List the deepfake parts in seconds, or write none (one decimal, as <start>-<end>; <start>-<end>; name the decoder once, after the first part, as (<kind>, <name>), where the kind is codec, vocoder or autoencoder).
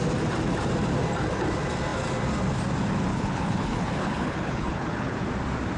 3.1-5.2 (codec, HILCodec)